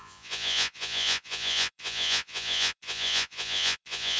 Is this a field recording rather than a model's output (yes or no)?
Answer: no